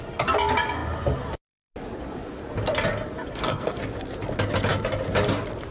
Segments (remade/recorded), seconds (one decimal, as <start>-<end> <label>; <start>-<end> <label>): 0.0-3.3 recorded; 3.3-3.8 remade; 3.8-5.7 recorded